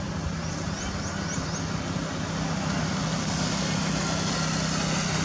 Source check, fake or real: real